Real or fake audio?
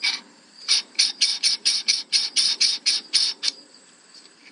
fake